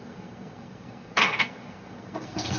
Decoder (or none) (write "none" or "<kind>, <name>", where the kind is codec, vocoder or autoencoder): codec, SNAC